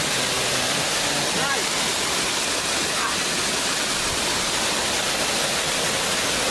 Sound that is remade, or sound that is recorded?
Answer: recorded